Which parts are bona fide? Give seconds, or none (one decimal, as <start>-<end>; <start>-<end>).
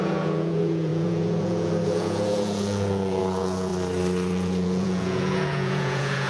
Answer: 3.7-4.3